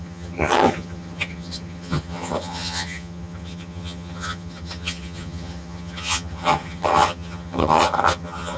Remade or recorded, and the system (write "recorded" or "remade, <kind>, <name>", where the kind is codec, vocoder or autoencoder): remade, vocoder, HiFi-GAN